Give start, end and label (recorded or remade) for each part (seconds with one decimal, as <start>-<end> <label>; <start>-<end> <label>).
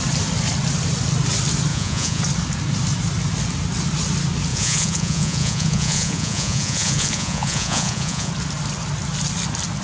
0.0-1.7 recorded; 1.7-2.2 remade; 2.2-4.5 recorded; 4.5-8.3 remade; 8.3-9.8 recorded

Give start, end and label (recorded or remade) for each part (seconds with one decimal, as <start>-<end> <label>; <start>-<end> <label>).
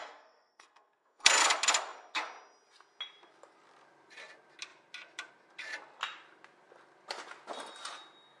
0.0-1.4 remade; 1.4-8.4 recorded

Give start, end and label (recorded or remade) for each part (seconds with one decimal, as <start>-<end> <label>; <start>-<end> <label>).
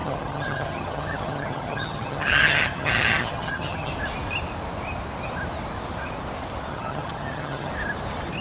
0.0-3.9 remade; 3.9-6.7 recorded; 6.7-7.7 remade; 7.7-8.4 recorded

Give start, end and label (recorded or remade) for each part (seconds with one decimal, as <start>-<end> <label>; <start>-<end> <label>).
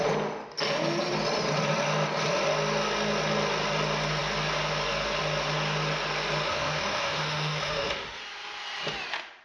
0.0-6.5 recorded; 6.5-8.2 remade; 8.2-9.4 recorded